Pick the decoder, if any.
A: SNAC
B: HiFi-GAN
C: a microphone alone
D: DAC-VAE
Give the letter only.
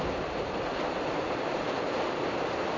C